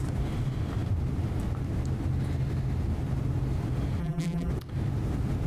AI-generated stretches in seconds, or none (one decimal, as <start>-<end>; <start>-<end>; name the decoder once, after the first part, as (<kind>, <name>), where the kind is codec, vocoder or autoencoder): 4.0-4.5 (vocoder, BigVGAN v2)